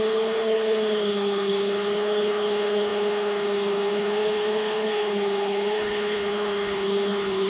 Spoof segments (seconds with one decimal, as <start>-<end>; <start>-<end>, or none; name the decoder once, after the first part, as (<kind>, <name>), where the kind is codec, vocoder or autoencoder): 0.0-7.5 (codec, HILCodec)